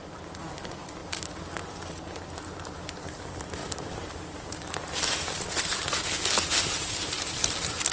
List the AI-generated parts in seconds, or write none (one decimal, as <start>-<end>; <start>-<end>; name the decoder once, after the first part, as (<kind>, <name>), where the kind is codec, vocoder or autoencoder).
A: 3.6-4.6 (vocoder, BigVGAN v2)